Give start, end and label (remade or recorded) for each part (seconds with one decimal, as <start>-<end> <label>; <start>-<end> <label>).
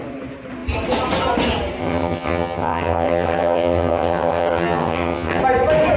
0.0-1.8 recorded; 1.8-5.4 remade; 5.4-6.0 recorded